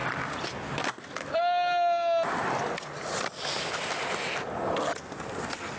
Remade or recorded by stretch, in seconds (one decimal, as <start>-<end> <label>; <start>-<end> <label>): 0.0-5.8 recorded